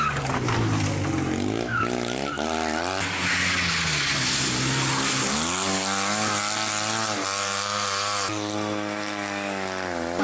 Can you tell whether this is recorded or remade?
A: recorded